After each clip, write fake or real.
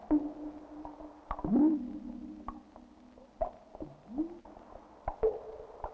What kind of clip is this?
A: real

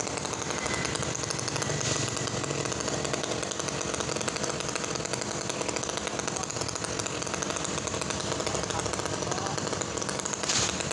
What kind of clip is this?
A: real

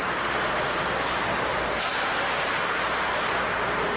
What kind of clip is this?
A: fake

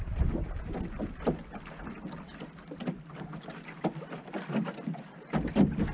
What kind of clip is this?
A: real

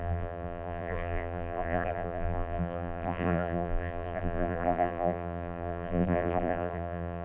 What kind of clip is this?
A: fake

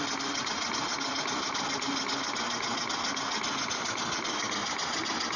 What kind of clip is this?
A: real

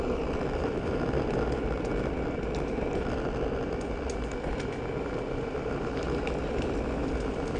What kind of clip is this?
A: real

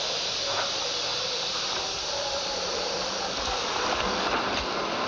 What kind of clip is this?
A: fake